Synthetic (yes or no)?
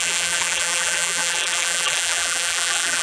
yes